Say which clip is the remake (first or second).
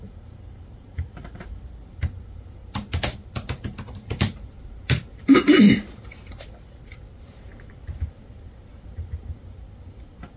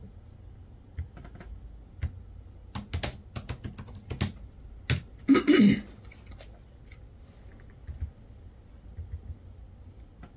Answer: first